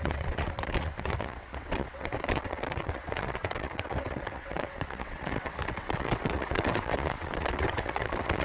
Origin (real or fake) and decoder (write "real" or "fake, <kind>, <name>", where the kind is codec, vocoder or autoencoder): fake, vocoder, WaveNeXt